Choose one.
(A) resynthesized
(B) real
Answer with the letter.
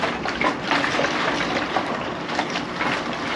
B